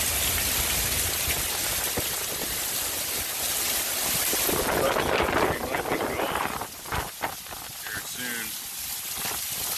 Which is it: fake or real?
real